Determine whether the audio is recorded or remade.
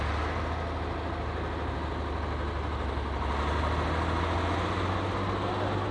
recorded